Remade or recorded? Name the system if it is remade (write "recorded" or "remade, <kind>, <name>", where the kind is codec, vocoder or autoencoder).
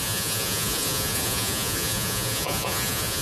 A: remade, vocoder, Vocos